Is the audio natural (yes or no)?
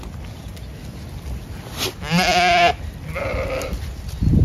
yes